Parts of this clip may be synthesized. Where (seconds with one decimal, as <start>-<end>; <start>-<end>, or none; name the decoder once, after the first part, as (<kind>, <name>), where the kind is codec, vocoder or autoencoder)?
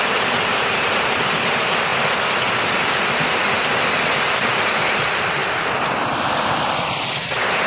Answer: 0.5-1.1 (vocoder, BigVGAN v2); 5.4-6.1